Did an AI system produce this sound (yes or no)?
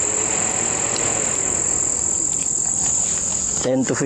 yes